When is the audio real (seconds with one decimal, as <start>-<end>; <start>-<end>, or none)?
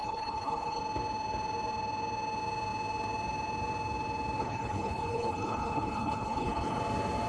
0.8-4.4; 6.8-7.3